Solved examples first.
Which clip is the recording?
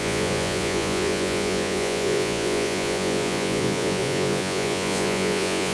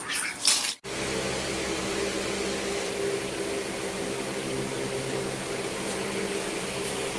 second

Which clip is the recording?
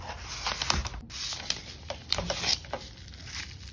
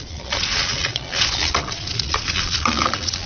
first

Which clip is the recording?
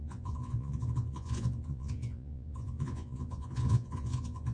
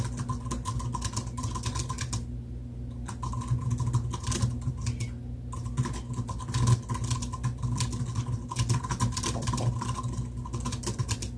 second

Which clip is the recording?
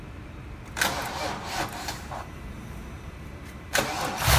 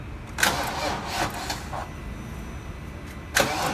second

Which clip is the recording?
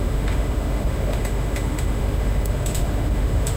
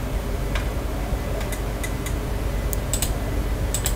second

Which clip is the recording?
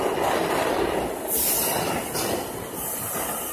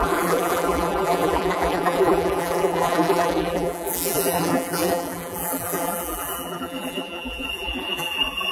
first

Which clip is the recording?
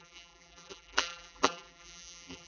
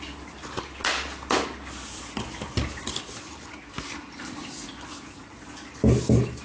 second